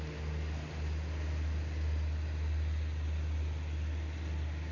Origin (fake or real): real